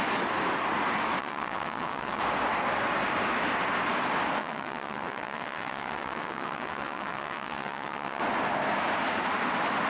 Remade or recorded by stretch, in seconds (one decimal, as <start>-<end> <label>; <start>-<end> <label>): 0.0-1.2 recorded; 1.2-2.2 remade; 2.2-4.4 recorded; 4.4-8.2 remade; 8.2-9.9 recorded